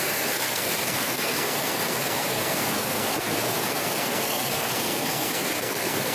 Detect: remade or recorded remade